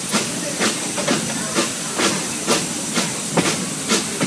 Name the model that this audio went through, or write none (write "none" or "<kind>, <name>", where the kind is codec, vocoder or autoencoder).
none